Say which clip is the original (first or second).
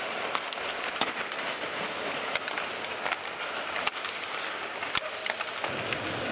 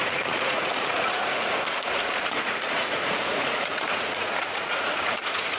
first